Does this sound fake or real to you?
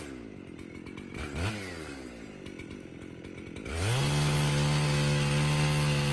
real